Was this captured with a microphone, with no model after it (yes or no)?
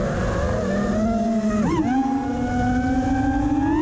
yes